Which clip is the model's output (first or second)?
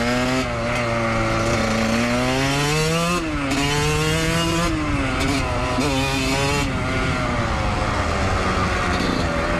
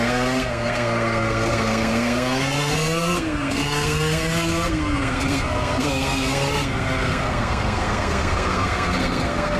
second